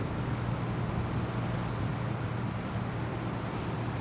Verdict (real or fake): real